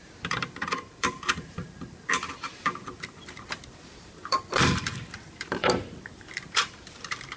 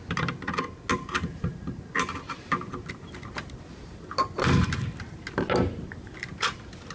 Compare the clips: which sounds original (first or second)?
second